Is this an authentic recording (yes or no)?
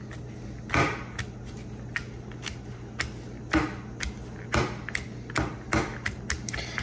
yes